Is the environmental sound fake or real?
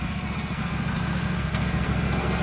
fake